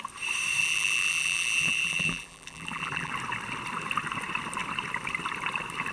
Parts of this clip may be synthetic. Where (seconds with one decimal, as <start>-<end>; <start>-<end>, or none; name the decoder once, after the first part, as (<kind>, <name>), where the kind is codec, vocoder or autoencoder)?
0.6-3.1 (vocoder, BigVGAN v2)